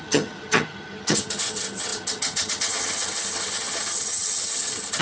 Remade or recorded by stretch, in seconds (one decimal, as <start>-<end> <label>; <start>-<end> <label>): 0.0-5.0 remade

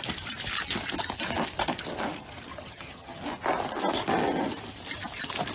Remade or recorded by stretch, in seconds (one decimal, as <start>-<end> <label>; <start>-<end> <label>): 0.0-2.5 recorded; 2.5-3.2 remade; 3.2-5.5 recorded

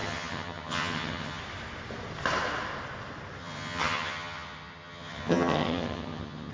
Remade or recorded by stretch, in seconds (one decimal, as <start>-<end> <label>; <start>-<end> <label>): 0.0-1.4 remade; 1.4-3.4 recorded; 3.4-6.5 remade

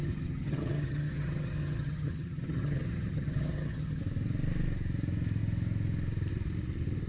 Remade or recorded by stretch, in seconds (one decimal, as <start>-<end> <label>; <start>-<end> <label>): 0.0-4.0 remade; 4.0-7.1 recorded

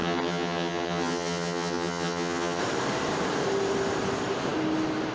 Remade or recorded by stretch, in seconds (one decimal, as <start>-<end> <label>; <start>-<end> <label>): 0.0-2.6 remade; 2.6-5.1 recorded